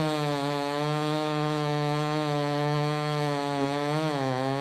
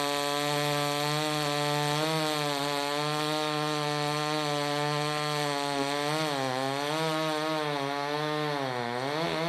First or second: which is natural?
second